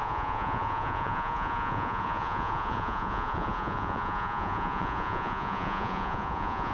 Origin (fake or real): fake